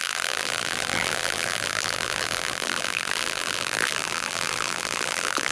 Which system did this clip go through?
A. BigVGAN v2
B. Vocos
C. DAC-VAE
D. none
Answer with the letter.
A